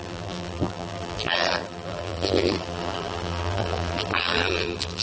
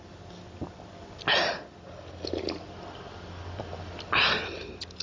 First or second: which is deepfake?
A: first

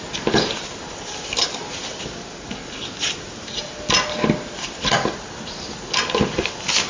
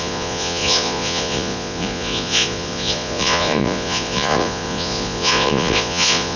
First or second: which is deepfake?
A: second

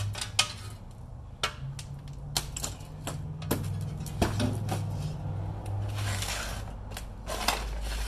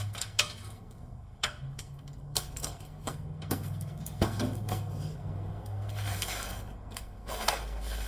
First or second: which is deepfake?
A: second